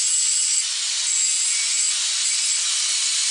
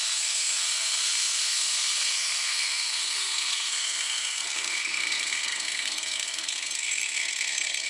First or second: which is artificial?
second